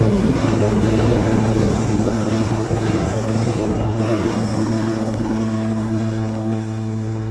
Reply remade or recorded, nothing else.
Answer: remade